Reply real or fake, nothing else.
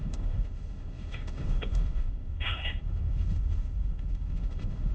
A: fake